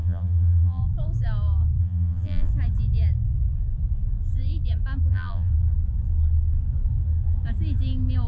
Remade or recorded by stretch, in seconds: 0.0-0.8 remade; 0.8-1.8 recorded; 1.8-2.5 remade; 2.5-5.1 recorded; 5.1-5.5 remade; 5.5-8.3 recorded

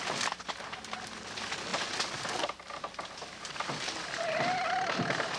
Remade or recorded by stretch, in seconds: 0.0-5.4 recorded

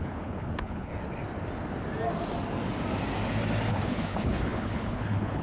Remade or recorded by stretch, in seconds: 0.0-0.9 remade; 0.9-3.7 recorded; 3.7-5.4 remade

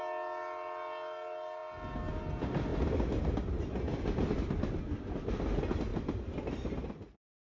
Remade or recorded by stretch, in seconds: 0.0-7.6 recorded

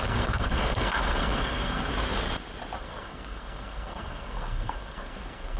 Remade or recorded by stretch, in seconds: 0.0-1.9 remade; 1.9-2.8 recorded; 2.8-5.6 remade

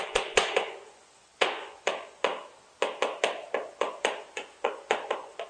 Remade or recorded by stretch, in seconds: 0.0-2.3 remade; 2.3-3.7 recorded; 3.7-5.5 remade